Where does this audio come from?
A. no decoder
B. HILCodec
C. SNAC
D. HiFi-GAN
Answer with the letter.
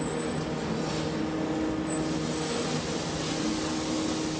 A